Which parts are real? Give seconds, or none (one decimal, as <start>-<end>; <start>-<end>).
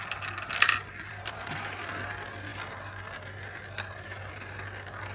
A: 0.0-1.1; 1.8-5.1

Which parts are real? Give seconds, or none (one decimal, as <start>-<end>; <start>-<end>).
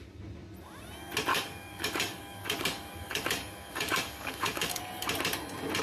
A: 0.0-1.3; 4.8-5.8